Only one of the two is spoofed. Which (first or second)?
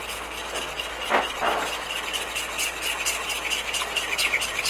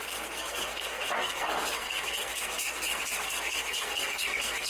second